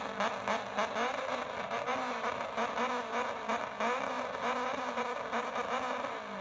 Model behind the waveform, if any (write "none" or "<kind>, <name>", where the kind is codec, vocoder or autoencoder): none